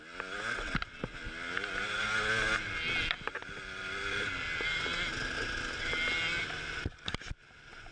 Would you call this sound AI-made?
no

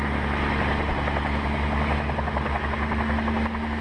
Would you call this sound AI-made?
no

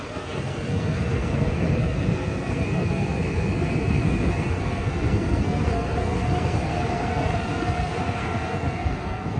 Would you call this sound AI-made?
yes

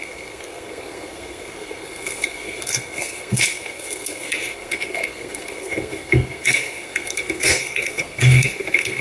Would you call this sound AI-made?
yes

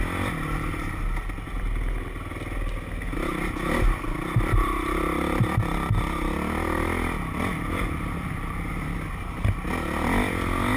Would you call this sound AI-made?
no